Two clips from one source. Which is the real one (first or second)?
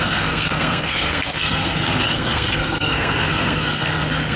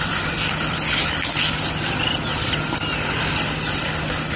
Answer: second